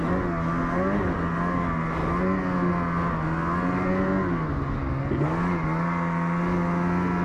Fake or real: real